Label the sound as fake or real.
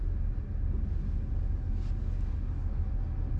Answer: real